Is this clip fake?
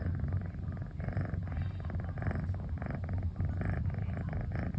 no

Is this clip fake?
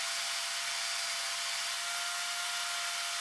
no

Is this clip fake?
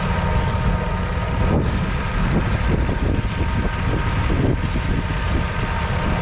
no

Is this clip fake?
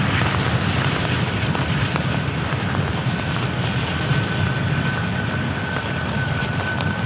yes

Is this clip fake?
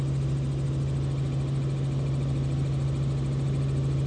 no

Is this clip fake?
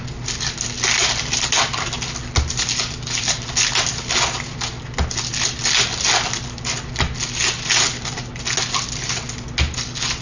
no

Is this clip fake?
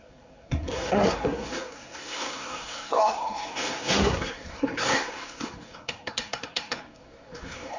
yes